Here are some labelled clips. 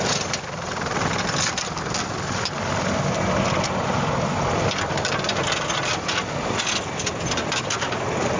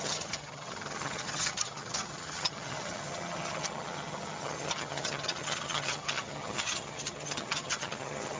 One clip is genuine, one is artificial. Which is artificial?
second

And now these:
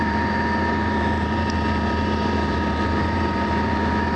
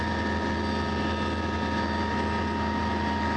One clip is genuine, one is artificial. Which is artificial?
first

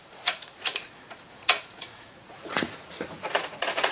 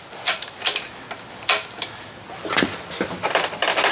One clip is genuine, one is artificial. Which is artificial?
first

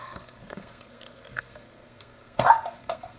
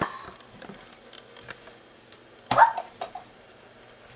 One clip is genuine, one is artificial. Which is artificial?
first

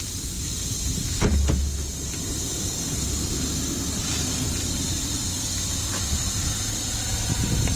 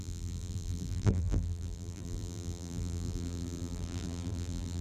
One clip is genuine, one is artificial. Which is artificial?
second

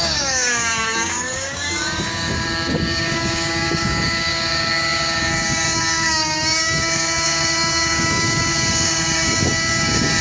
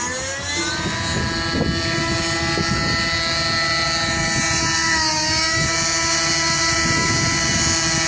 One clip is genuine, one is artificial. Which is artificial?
first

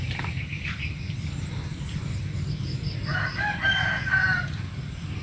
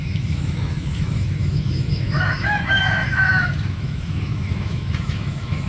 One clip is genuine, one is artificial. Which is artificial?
second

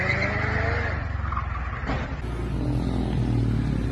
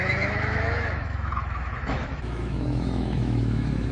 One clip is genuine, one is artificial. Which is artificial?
second